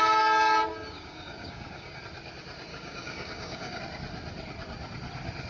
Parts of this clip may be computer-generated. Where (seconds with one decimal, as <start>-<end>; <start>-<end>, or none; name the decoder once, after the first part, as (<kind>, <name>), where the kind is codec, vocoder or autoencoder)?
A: 0.7-2.0 (codec, DAC); 2.7-3.8